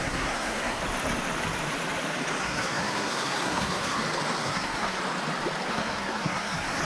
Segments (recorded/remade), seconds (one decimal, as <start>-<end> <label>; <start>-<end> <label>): 0.0-0.8 remade; 0.8-2.4 recorded; 2.4-4.0 remade; 4.0-4.4 recorded; 4.4-5.0 remade; 5.0-5.7 recorded; 5.7-6.8 remade